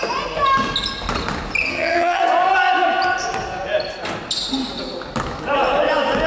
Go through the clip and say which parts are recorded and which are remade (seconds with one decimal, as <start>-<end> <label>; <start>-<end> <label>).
0.0-1.7 recorded; 1.7-2.2 remade; 2.2-6.3 recorded